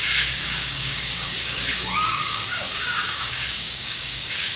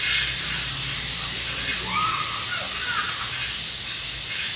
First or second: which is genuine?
second